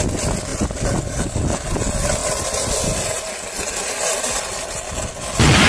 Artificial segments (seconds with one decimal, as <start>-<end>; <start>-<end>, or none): none